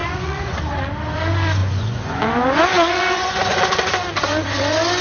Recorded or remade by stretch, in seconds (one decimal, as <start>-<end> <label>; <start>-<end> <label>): 0.0-0.6 remade; 0.6-1.6 recorded; 1.6-2.2 remade; 2.2-2.7 recorded; 2.7-3.6 remade; 3.6-5.0 recorded